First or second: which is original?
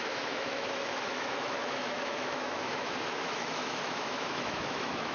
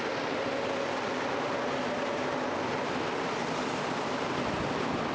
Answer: second